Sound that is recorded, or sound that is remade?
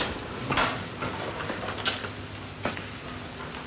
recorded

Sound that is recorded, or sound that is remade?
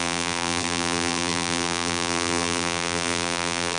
remade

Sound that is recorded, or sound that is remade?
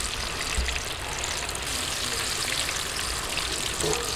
recorded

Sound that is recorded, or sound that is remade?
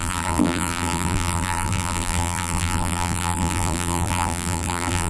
remade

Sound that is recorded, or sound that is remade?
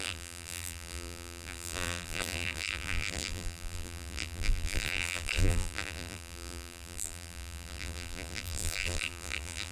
remade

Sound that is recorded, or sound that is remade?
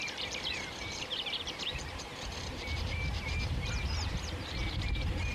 remade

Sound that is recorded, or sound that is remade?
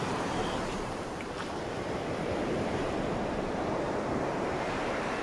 remade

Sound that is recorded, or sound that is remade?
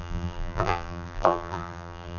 remade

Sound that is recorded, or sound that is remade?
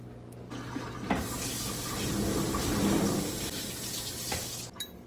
recorded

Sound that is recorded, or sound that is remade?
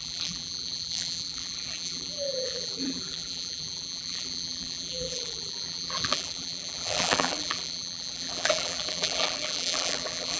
remade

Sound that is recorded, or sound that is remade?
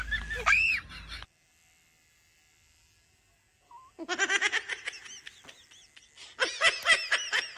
recorded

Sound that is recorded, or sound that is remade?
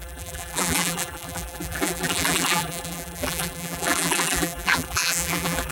remade